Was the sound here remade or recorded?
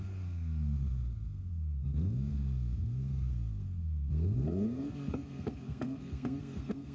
remade